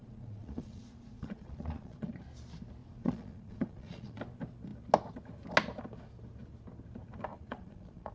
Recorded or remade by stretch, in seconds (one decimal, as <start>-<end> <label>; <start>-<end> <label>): 0.0-2.1 remade; 2.1-2.8 recorded; 2.8-4.2 remade; 4.2-7.3 recorded; 7.3-8.1 remade